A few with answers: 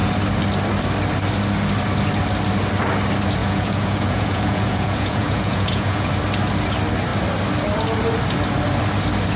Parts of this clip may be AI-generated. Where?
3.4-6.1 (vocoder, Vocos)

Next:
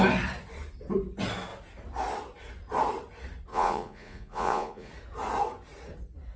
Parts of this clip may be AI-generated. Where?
3.5-4.9 (vocoder, Vocos)

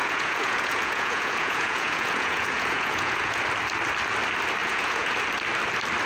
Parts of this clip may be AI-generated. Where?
0.0-3.4 (vocoder, Vocos); 4.6-5.2